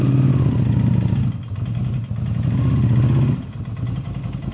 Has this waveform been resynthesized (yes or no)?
no